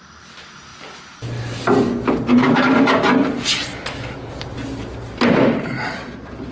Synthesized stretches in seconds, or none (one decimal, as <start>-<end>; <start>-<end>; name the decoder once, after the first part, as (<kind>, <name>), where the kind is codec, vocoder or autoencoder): none